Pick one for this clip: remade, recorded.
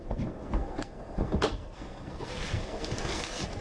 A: remade